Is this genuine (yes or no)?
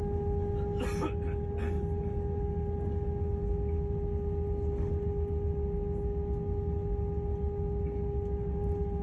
yes